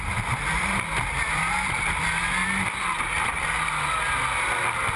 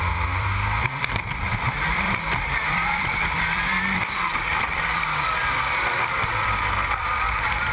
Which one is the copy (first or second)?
second